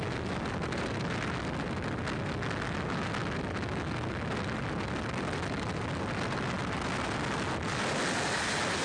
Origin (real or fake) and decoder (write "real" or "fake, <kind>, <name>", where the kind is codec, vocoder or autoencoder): real